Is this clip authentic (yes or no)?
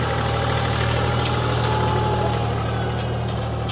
yes